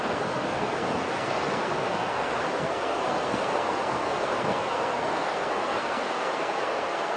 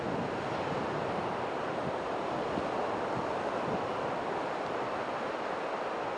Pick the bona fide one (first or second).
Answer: second